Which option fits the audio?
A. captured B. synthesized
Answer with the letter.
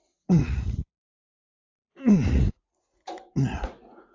B